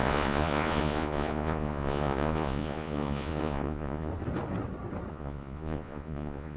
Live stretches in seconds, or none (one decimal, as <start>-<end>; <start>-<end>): 4.1-5.1